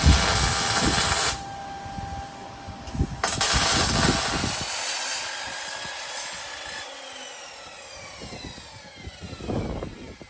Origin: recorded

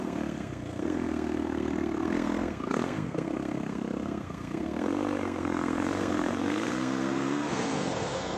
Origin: remade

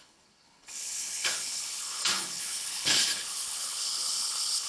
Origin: remade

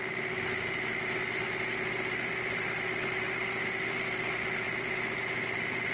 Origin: recorded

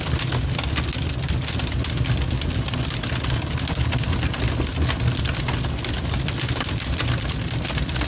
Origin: recorded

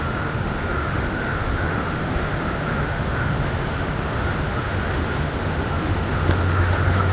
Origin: remade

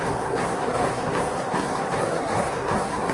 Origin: remade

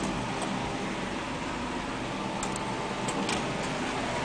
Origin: recorded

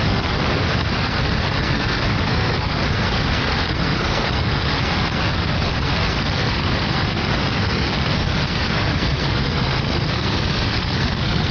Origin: remade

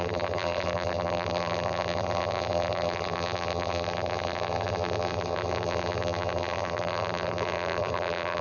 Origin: remade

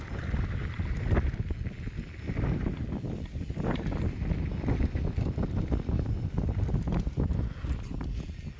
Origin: recorded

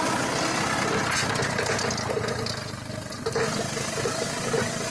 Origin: recorded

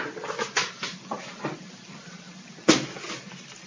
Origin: recorded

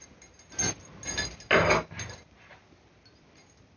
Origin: recorded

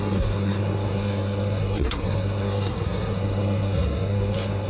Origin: remade